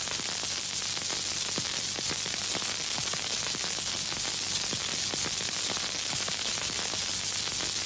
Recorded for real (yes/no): yes